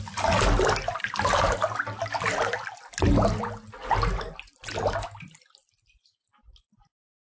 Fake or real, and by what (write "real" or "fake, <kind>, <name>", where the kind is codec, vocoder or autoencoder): real